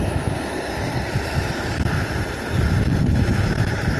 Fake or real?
fake